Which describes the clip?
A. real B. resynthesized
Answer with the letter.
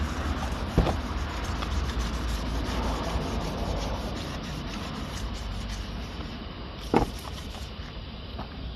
B